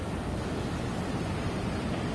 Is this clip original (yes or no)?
yes